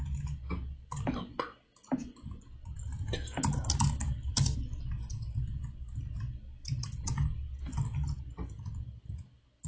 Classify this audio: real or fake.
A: real